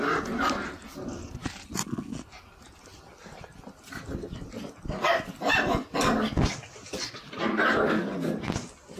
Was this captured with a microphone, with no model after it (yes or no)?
yes